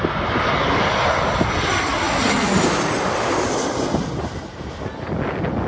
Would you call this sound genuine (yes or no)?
yes